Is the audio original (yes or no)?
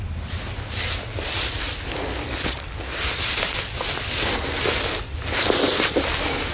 yes